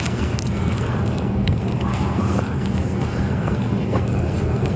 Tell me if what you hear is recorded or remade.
remade